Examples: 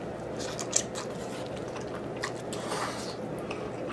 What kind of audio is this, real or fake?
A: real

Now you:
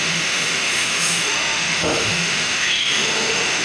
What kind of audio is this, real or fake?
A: fake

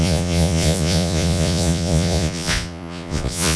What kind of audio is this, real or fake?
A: fake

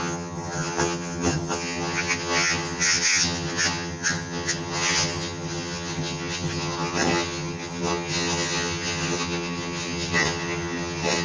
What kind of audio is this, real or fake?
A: fake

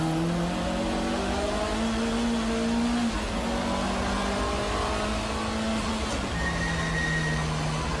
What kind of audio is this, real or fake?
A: real